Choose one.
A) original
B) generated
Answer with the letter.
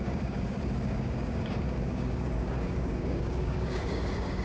B